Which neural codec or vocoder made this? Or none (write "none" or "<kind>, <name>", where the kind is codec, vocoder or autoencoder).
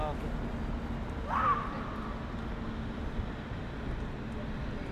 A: none